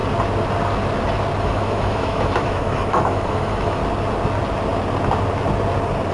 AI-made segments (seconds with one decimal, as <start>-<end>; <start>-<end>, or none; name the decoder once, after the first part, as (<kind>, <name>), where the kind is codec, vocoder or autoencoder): 1.4-3.8 (autoencoder, DAC-VAE)